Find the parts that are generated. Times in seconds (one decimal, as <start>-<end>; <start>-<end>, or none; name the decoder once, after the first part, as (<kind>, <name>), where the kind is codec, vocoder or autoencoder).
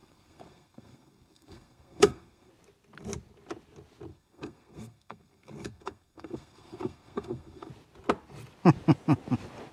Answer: 0.0-2.5 (codec, SNAC); 4.1-7.7